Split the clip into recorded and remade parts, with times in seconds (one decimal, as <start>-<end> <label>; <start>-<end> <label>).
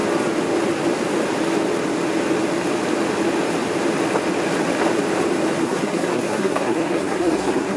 0.0-5.6 recorded; 5.6-7.8 remade